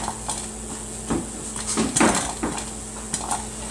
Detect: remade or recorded recorded